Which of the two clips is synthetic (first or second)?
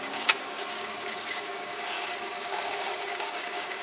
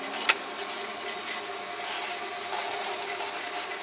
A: first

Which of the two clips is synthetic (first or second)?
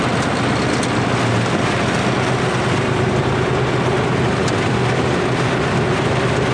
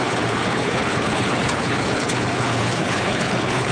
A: second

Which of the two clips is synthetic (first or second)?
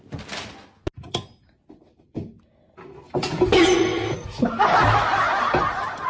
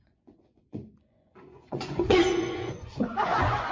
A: second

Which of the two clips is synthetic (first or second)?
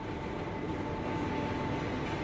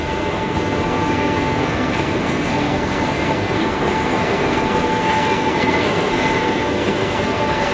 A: second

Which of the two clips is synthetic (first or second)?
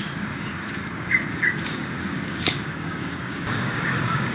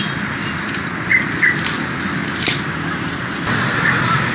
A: first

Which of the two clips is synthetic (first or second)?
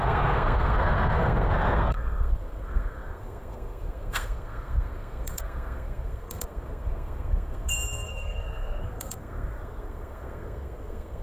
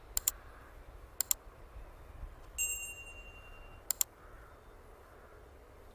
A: first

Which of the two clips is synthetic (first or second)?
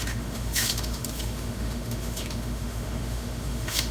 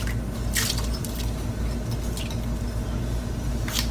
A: first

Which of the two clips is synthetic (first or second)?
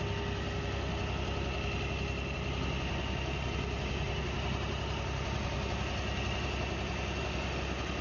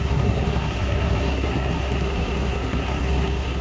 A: second